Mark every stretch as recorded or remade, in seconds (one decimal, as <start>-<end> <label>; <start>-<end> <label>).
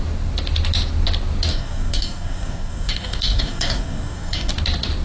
0.0-1.5 recorded; 1.5-4.5 remade; 4.5-5.0 recorded